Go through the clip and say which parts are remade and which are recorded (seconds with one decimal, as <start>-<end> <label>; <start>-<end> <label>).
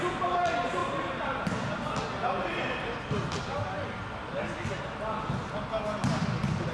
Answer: 0.0-6.7 recorded